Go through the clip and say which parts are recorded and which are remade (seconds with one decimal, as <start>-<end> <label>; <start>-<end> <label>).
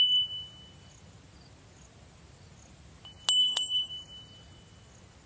0.0-3.4 recorded; 3.4-3.9 remade; 3.9-5.3 recorded